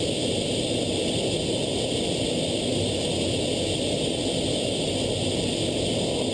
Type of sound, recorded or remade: recorded